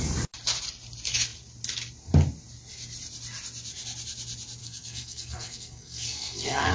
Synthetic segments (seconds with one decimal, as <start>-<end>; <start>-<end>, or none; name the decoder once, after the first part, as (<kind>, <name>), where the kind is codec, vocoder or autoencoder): 4.6-6.7 (codec, SNAC)